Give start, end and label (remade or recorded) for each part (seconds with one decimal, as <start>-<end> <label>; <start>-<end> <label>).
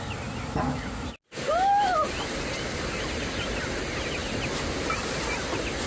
0.0-5.9 recorded